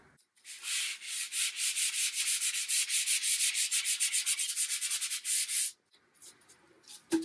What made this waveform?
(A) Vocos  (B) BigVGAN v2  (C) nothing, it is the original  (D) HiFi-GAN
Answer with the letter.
C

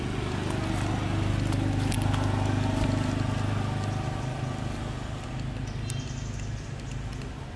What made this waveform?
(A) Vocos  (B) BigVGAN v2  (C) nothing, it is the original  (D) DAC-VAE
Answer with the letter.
C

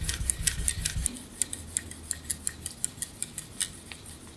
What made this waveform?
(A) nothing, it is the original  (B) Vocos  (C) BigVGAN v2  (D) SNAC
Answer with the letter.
A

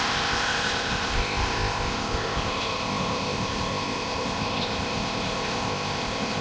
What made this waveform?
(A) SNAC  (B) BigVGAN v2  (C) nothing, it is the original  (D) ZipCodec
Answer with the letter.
D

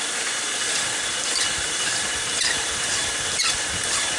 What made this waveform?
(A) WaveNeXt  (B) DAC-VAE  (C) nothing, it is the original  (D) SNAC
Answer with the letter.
C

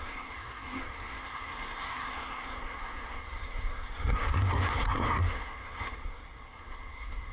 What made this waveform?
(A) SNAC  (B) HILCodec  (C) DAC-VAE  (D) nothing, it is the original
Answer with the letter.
A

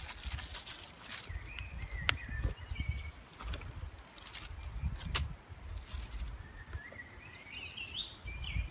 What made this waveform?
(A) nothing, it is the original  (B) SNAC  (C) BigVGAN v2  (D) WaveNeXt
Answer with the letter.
A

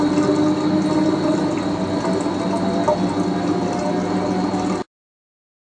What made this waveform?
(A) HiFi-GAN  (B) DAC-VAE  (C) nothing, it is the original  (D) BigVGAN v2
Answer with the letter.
C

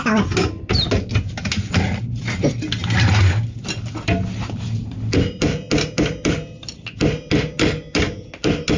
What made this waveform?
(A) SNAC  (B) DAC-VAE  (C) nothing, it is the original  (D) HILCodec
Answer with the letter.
C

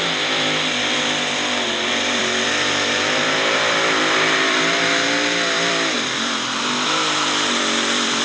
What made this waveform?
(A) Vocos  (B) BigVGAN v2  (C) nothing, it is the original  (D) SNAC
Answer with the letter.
B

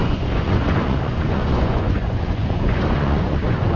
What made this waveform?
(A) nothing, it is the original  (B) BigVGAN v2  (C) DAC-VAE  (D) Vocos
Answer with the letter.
D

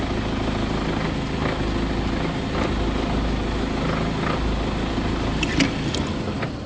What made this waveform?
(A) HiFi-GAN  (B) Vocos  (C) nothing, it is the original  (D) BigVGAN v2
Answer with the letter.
C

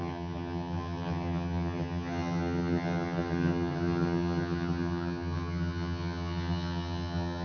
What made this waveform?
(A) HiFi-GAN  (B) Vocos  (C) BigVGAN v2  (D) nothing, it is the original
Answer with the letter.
A